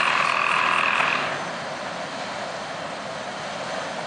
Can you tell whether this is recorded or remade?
recorded